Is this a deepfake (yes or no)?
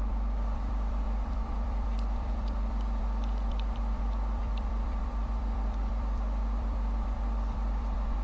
yes